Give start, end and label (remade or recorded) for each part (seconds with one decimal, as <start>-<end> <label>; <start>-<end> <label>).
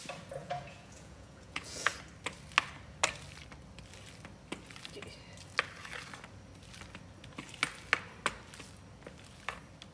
0.0-0.4 recorded; 0.4-1.9 remade; 1.9-9.9 recorded